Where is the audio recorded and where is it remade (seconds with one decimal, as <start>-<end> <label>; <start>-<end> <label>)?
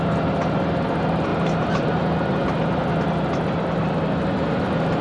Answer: 0.0-1.3 recorded; 1.3-2.0 remade; 2.0-5.0 recorded